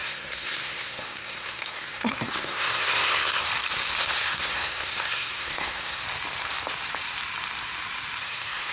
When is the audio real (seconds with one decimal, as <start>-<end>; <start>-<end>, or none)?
3.5-4.0; 6.0-8.2